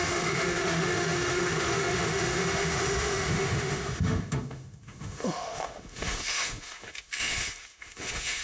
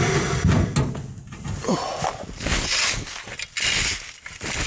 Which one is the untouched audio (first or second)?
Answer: second